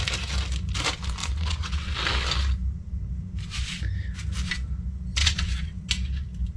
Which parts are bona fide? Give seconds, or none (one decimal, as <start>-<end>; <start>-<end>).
0.0-1.2; 1.9-5.2; 5.9-6.6